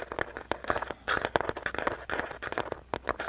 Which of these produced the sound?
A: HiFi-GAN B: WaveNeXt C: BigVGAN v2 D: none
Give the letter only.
D